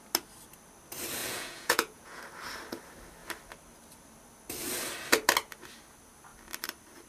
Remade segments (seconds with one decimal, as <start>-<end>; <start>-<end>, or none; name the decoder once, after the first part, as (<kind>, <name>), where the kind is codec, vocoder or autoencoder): 1.2-2.2 (vocoder, Vocos)